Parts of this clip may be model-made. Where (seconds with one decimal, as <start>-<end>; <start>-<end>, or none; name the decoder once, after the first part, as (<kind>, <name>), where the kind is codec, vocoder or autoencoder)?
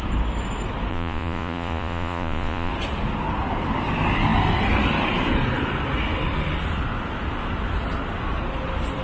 0.9-2.7 (vocoder, Vocos)